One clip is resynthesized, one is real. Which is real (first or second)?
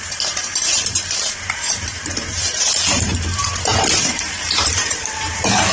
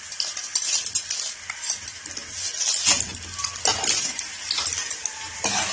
second